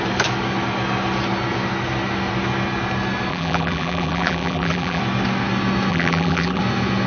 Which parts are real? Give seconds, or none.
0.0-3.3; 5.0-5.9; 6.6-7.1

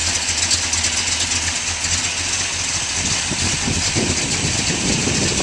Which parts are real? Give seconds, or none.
0.0-3.2

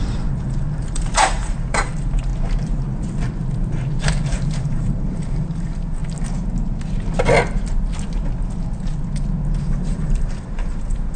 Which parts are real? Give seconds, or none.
2.3-4.0; 6.0-9.6

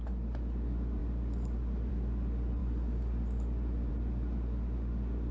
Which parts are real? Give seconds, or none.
0.0-5.3